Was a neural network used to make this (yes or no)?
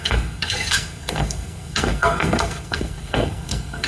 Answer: yes